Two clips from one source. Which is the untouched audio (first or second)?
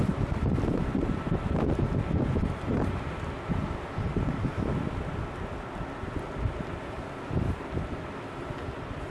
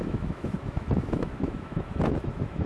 first